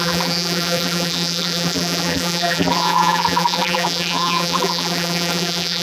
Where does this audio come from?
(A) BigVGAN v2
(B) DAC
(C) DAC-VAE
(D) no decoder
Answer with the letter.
A